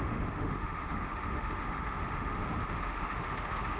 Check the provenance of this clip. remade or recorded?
remade